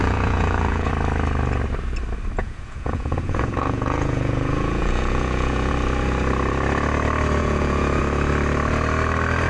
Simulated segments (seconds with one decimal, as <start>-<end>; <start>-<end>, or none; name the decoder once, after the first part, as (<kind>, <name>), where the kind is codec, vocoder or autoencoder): 0.0-0.9 (vocoder, Vocos); 2.4-5.7; 7.4-8.0